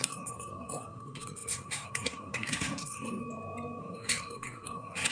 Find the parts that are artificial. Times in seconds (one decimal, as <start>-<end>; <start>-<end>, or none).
0.0-3.2; 3.8-5.1